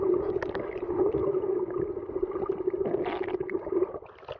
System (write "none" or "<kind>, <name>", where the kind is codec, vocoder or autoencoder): none